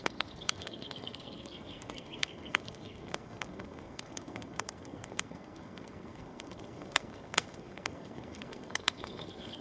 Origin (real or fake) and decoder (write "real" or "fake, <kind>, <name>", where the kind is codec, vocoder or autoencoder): fake, codec, SNAC